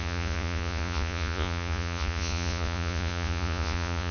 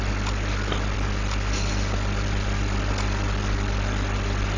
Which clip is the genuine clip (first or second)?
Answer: second